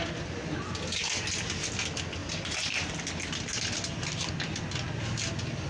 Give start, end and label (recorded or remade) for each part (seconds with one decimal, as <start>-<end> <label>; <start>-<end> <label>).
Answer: 0.0-2.2 recorded; 2.2-2.9 remade; 2.9-5.7 recorded